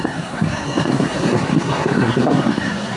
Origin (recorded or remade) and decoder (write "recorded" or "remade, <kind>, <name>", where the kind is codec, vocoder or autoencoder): remade, codec, SNAC